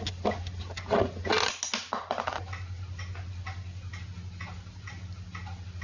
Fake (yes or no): no